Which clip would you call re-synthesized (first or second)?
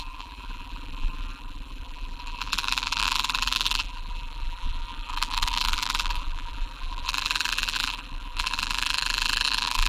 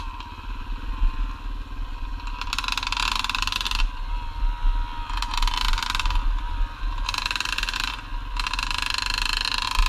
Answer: first